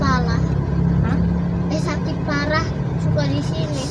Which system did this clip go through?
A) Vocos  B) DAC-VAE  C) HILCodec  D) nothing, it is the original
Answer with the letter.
D